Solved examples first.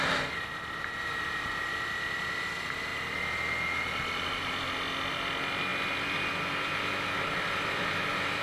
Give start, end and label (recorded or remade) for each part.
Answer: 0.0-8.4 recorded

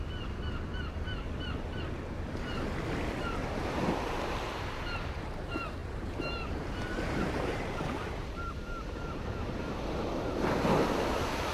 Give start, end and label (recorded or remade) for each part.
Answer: 0.0-3.4 recorded; 3.4-4.3 remade; 4.3-5.8 recorded; 5.8-8.4 remade; 8.4-11.5 recorded

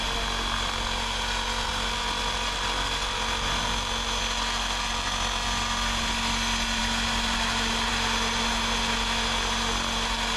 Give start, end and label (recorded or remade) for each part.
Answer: 0.0-10.4 recorded

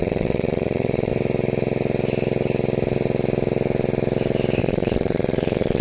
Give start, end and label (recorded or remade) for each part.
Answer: 0.0-1.1 remade; 1.1-4.6 recorded; 4.6-5.8 remade